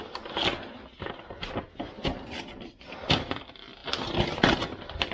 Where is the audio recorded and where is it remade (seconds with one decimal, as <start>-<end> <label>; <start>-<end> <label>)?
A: 0.0-5.1 recorded